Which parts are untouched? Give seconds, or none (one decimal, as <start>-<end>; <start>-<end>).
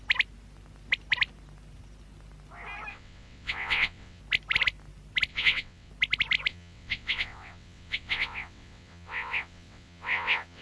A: 0.0-2.9; 4.2-5.3; 5.9-6.5